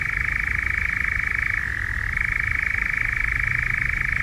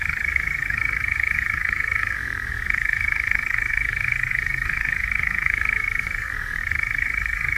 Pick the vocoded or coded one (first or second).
second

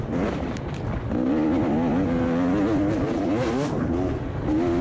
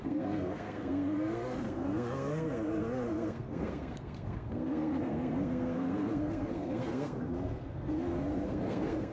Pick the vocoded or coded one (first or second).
second